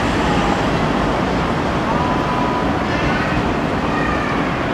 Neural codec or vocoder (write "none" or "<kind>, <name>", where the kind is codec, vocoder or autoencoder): none